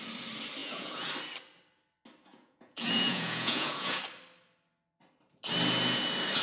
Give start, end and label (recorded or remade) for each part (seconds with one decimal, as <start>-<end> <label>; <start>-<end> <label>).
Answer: 0.0-0.6 recorded; 0.6-1.1 remade; 1.1-2.3 recorded; 2.3-4.0 remade; 4.0-6.4 recorded